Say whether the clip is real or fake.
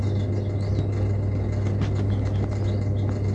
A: real